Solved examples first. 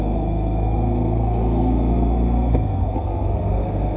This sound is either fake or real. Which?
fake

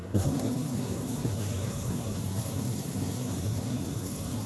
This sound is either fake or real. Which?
fake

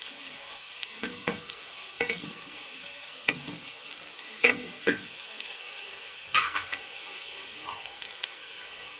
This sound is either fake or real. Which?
fake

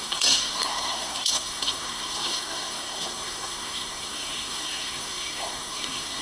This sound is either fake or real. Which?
fake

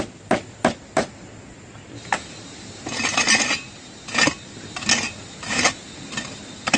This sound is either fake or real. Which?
real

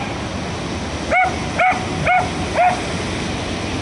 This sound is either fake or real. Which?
real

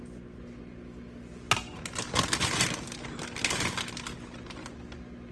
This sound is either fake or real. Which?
real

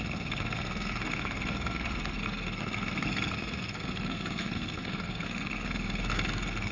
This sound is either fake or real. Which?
fake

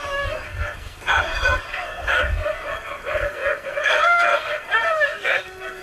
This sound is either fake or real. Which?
fake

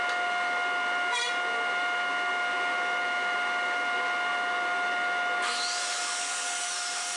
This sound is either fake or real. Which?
real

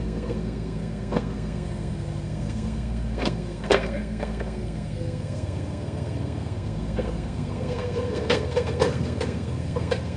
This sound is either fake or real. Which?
fake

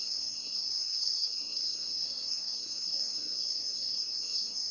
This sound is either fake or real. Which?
fake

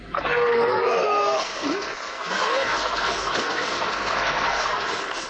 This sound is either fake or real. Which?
fake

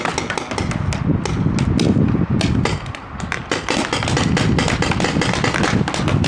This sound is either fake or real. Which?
real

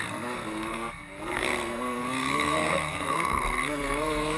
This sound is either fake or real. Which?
fake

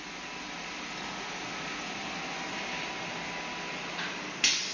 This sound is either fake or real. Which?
real